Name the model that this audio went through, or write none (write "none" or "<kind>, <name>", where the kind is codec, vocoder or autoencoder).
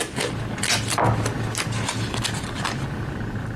none